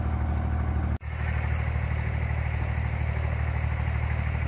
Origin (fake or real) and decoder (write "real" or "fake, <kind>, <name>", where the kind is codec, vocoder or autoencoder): real